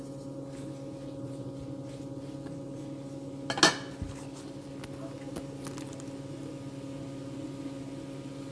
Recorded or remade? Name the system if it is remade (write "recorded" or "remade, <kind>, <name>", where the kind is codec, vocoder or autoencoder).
recorded